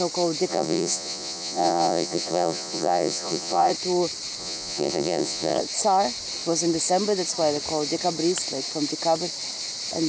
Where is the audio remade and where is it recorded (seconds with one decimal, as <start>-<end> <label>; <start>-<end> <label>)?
0.0-0.5 recorded; 0.5-3.7 remade; 3.7-4.4 recorded; 4.4-5.6 remade; 5.6-10.1 recorded